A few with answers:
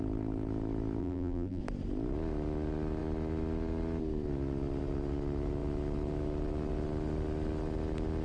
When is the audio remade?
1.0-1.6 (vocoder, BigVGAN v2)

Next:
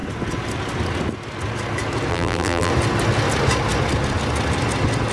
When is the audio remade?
2.1-2.7 (vocoder, BigVGAN v2)